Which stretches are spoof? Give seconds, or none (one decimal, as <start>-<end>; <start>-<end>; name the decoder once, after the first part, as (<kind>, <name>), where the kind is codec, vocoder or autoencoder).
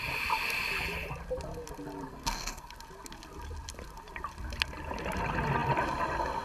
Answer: 2.1-2.7 (codec, SNAC)